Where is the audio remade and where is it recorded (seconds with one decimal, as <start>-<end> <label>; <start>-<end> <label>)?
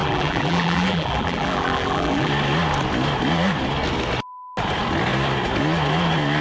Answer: 0.0-2.3 remade; 2.3-6.4 recorded